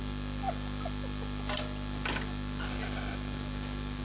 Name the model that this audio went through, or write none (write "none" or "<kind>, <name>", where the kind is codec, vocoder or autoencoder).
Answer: none